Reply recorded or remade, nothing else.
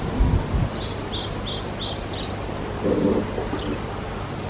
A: recorded